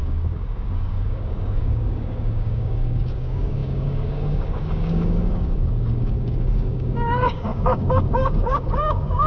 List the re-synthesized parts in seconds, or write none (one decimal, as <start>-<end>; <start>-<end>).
0.0-9.3